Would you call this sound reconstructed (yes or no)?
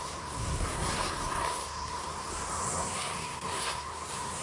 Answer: yes